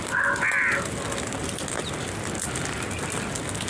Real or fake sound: real